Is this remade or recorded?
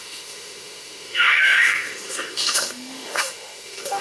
remade